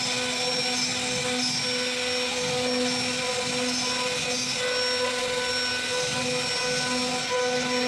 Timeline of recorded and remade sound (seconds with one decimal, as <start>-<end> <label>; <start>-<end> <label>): 0.0-7.9 recorded